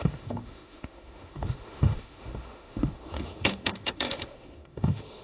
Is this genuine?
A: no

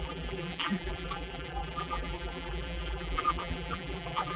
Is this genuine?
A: no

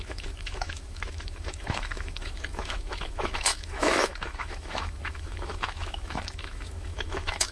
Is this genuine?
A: no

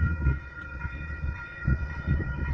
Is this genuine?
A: no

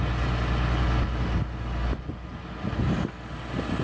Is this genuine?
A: yes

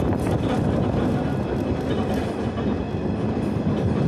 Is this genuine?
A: yes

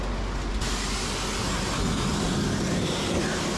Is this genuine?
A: yes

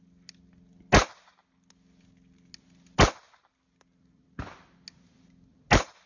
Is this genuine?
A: yes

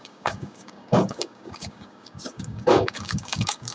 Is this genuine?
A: no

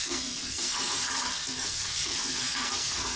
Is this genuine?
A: no